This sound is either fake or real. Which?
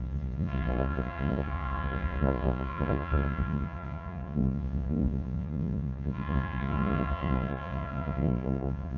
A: fake